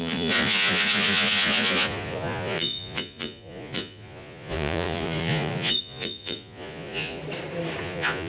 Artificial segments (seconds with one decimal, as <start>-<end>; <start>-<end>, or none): 0.0-7.2; 7.8-8.3